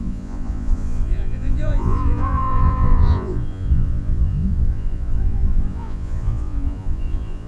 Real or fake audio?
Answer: fake